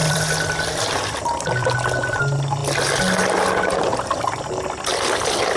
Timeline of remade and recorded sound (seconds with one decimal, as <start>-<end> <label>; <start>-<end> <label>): 0.0-2.2 remade; 2.2-5.6 recorded